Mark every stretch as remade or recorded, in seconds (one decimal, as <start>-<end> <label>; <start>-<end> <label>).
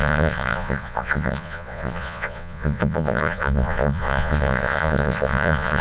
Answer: 0.0-5.8 remade